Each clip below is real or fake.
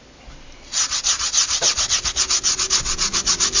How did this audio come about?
real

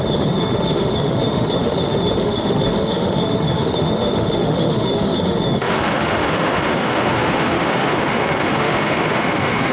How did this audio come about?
fake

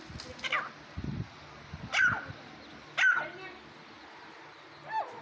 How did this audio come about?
real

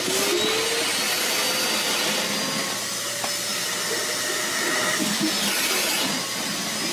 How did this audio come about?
real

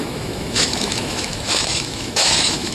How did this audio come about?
fake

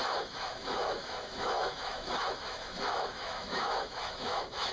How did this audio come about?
fake